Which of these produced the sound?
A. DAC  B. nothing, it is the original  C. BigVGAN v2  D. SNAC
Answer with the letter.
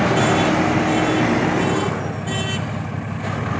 B